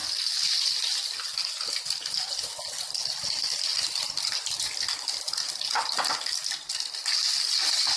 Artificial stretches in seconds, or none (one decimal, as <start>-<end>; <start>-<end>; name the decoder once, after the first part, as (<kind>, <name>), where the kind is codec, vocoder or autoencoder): none